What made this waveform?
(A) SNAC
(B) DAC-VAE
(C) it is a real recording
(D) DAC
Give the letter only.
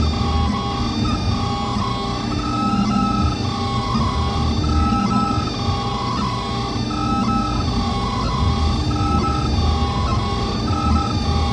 C